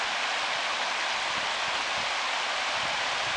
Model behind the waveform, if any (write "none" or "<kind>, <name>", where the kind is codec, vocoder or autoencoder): none